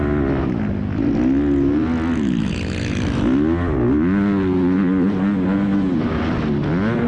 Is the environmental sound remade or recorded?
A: recorded